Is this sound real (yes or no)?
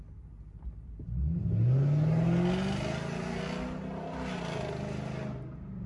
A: yes